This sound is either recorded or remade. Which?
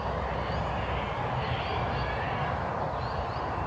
recorded